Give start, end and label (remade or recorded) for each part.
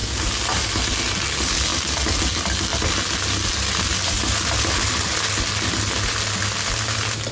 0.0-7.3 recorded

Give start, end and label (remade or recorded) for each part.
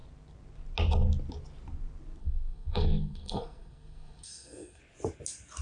0.0-2.2 recorded; 2.2-4.8 remade; 4.8-5.6 recorded